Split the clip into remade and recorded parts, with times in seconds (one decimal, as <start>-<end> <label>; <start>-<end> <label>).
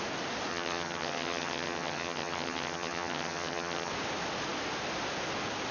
0.0-0.5 recorded; 0.5-3.9 remade; 3.9-5.7 recorded